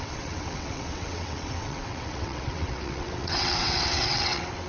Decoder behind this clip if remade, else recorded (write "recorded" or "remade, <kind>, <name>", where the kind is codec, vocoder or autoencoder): remade, vocoder, WaveNeXt